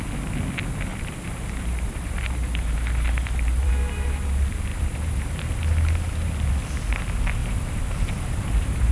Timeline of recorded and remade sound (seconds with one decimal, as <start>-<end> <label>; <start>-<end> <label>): 0.0-0.9 recorded; 0.9-3.7 remade; 3.7-4.7 recorded; 4.7-5.6 remade; 5.6-7.4 recorded; 7.4-8.9 remade